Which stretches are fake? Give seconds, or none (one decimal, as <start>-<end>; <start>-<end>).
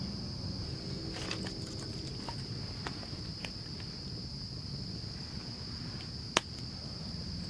none